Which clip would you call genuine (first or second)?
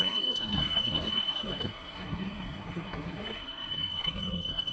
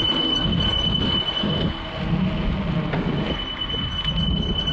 second